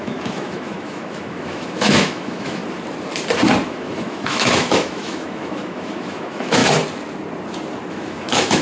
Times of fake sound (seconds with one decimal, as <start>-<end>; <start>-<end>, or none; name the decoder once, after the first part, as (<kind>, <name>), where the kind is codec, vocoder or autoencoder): 0.0-2.6 (autoencoder, DAC-VAE); 3.7-6.6; 7.9-8.6